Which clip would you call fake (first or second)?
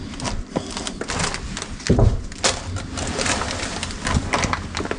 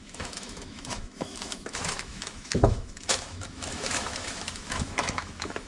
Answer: second